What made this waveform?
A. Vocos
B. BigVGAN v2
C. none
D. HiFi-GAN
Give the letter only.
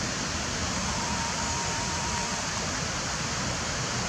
C